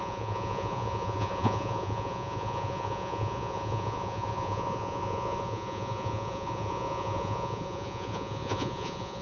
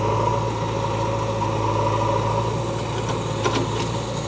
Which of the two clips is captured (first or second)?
second